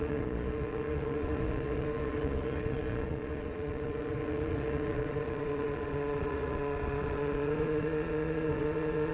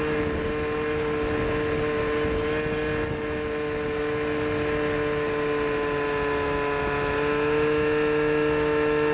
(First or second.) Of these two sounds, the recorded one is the second